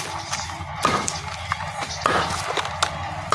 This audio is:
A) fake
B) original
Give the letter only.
B